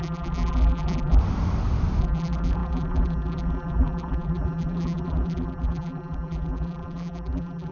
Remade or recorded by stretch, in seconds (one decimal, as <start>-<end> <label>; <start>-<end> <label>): 0.0-1.2 remade; 1.2-2.0 recorded; 2.0-7.7 remade